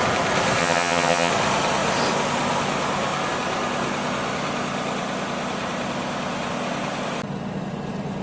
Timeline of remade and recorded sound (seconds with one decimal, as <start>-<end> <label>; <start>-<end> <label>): 0.0-0.6 recorded; 0.6-1.3 remade; 1.3-8.2 recorded